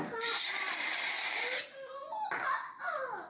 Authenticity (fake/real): real